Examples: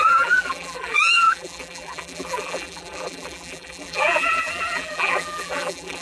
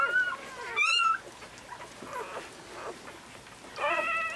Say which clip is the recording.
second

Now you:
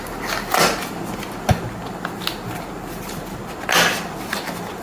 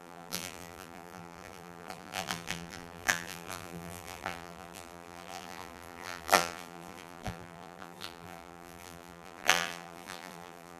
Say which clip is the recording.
first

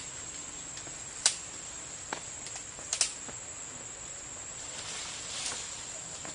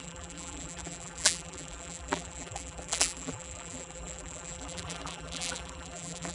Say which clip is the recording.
first